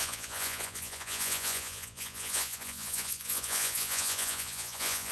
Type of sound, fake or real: fake